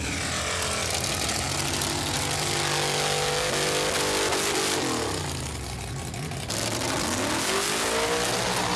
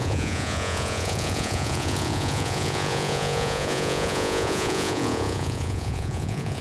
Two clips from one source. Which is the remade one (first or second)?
second